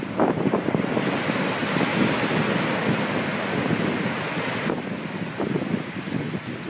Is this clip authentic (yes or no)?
yes